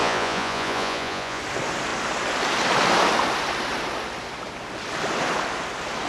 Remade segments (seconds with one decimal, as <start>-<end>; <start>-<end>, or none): 0.0-1.4